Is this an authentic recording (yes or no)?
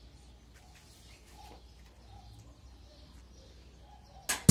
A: yes